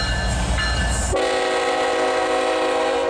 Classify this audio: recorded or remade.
recorded